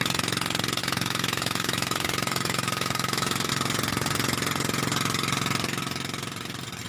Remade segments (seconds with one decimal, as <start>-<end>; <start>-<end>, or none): 0.8-3.5

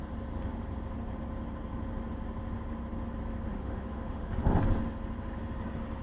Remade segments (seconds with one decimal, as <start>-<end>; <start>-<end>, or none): 3.5-4.4

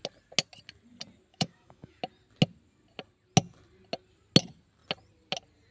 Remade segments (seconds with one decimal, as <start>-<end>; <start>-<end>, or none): 1.3-2.0

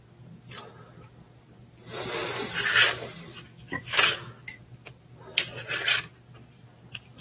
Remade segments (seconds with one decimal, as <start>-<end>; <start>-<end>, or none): 3.3-4.6

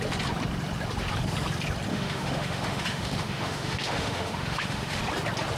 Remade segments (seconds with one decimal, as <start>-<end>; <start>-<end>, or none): 1.9-5.0